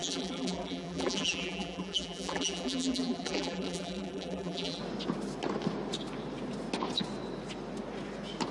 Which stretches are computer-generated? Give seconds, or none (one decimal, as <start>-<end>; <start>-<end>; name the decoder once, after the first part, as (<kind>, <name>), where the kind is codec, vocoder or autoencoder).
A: 0.0-4.8 (vocoder, BigVGAN v2)